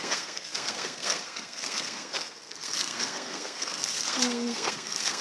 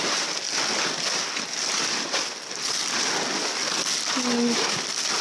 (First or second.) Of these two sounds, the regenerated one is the first